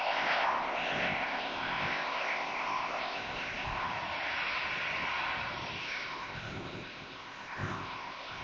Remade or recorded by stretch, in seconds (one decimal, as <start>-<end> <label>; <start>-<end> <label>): 0.0-3.9 remade; 3.9-5.8 recorded; 5.8-8.4 remade

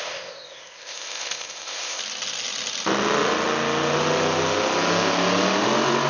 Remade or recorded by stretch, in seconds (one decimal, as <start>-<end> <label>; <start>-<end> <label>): 0.0-2.0 remade; 2.0-6.1 recorded

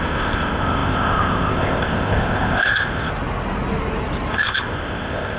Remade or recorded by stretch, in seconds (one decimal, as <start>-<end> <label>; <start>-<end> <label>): 0.0-3.1 remade; 3.1-4.3 recorded; 4.3-5.4 remade

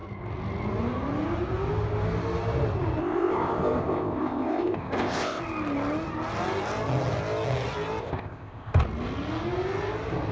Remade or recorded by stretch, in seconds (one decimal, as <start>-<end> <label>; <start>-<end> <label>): 0.0-3.0 recorded; 3.0-5.4 remade; 5.4-8.0 recorded; 8.0-8.8 remade; 8.8-10.3 recorded

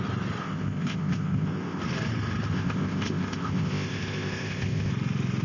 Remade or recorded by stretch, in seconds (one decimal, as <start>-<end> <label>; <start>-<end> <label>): 0.0-0.4 recorded; 0.4-1.8 remade; 1.8-2.5 recorded; 2.5-4.9 remade; 4.9-5.4 recorded

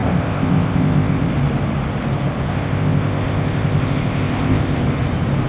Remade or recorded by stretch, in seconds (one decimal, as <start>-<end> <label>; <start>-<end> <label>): 0.0-1.3 remade; 1.3-2.5 recorded; 2.5-4.8 remade; 4.8-5.5 recorded

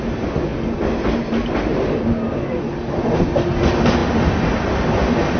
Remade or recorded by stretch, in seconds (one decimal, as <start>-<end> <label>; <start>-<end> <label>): 0.0-5.4 recorded

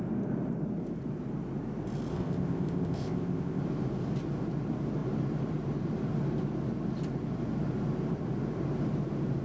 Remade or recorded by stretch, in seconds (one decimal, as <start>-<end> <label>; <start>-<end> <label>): 0.0-2.1 recorded; 2.1-3.6 remade; 3.6-9.4 recorded